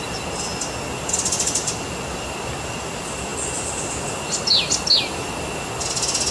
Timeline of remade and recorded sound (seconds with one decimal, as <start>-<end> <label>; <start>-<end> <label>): 0.0-6.3 recorded